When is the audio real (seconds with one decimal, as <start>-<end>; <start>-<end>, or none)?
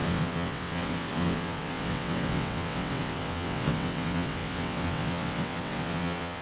none